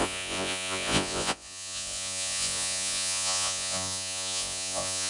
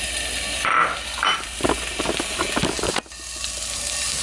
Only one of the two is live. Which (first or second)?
second